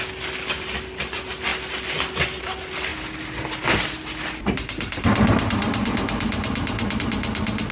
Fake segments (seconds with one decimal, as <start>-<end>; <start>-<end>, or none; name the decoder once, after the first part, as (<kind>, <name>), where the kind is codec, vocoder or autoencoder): 1.5-2.2 (vocoder, BigVGAN v2); 2.9-7.0